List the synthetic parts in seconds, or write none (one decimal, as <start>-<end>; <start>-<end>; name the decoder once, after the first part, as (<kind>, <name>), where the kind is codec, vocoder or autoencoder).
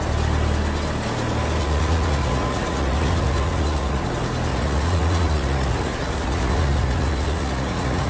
1.6-4.0 (vocoder, Vocos); 4.5-8.1